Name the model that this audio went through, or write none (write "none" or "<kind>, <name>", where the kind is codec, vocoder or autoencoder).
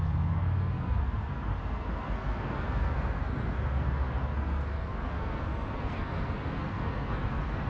codec, SNAC